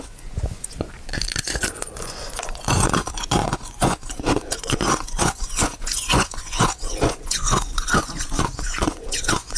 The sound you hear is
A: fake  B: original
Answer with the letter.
A